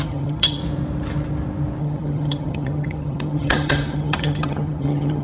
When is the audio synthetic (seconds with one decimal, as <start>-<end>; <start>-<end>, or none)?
0.0-0.6; 1.8-5.2